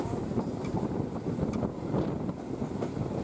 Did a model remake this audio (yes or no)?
no